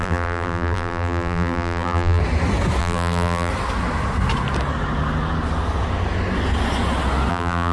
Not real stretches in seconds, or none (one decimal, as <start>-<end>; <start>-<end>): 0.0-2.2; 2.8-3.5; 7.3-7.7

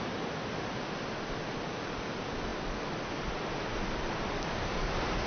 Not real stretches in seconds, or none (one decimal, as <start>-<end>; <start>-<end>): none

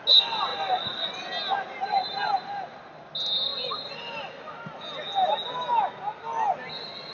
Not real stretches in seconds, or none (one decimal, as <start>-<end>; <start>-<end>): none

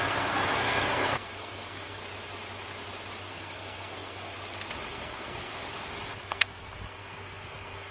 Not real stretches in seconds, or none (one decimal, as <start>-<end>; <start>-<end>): 0.0-2.0; 3.2-4.3; 4.9-5.5; 6.2-7.9

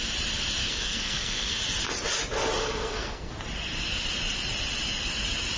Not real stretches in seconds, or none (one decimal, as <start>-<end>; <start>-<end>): 0.6-1.6; 2.6-3.3